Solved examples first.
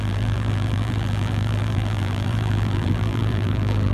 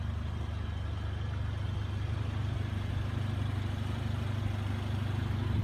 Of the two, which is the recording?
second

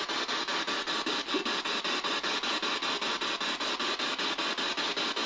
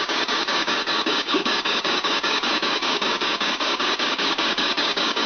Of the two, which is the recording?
first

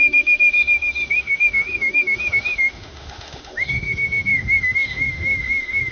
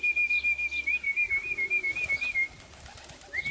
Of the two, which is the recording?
second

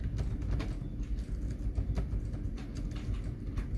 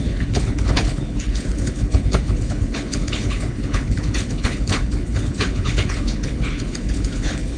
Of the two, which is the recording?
first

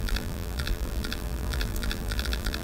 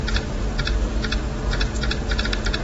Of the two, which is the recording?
second